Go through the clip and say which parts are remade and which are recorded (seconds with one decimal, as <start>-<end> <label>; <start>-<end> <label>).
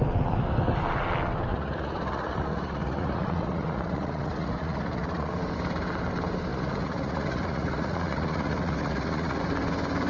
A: 0.0-1.5 recorded; 1.5-5.3 remade; 5.3-6.5 recorded; 6.5-9.4 remade; 9.4-10.1 recorded